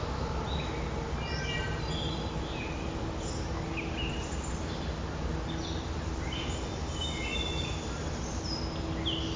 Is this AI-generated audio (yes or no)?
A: no